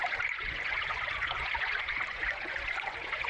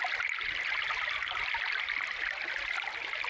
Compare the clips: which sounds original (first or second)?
second